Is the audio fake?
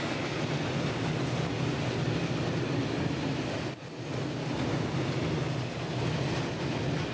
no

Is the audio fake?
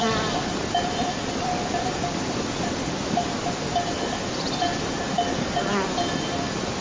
no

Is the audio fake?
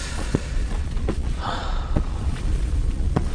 yes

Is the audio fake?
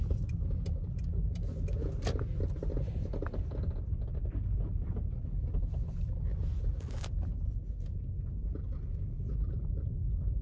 no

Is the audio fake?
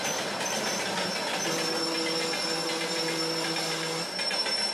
no